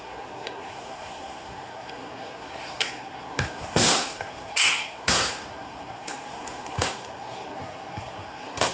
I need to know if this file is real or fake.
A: fake